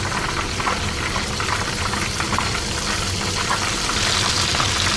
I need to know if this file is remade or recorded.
recorded